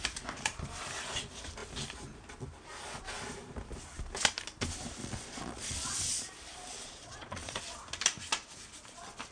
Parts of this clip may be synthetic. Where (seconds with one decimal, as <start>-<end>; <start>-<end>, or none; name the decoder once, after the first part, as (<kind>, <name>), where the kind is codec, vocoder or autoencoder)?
5.0-6.0 (vocoder, Vocos); 6.8-7.6